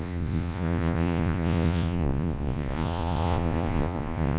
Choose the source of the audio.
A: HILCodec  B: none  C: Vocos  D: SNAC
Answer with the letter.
C